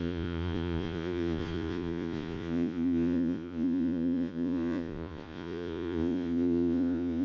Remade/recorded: remade